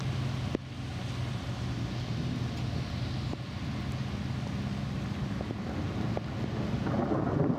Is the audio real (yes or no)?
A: yes